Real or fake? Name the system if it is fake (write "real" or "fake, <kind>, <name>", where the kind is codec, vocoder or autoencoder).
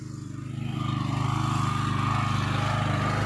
real